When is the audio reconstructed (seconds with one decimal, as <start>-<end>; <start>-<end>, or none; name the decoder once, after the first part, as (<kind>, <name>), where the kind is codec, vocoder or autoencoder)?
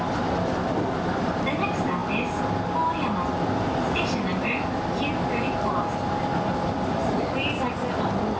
none